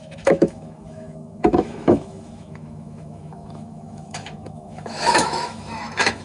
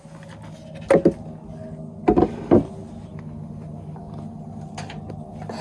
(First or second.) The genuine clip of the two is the second